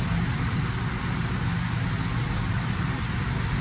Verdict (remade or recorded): recorded